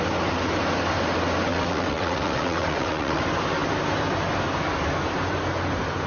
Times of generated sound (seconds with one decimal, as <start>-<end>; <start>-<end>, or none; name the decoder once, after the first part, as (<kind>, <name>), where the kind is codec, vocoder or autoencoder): 1.5-3.2 (vocoder, WaveNeXt)